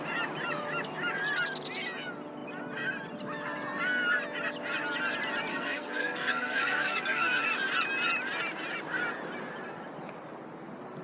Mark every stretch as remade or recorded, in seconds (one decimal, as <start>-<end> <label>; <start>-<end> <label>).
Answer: 0.0-5.5 recorded; 5.5-7.4 remade; 7.4-11.0 recorded